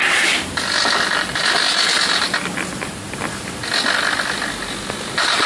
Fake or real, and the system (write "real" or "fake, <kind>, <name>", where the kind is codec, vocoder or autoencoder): real